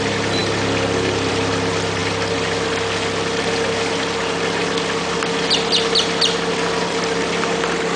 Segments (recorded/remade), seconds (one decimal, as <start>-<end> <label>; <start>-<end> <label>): 0.0-8.0 recorded